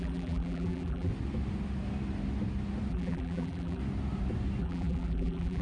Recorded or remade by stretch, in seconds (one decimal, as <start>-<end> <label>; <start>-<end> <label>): 0.0-1.1 remade; 1.1-2.9 recorded; 2.9-3.8 remade; 3.8-4.6 recorded; 4.6-5.6 remade